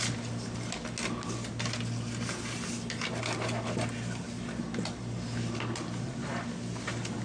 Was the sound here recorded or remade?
recorded